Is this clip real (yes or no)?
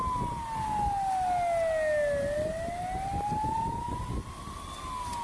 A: yes